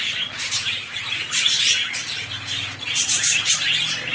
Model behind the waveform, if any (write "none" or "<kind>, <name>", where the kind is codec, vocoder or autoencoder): vocoder, BigVGAN v2